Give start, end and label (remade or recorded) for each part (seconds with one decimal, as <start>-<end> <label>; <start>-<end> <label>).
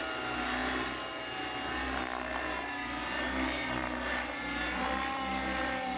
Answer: 0.0-6.0 recorded